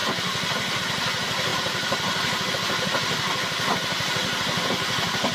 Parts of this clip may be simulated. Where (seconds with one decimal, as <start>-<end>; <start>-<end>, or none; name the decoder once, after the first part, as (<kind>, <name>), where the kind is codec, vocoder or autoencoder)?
1.5-2.5 (vocoder, BigVGAN v2)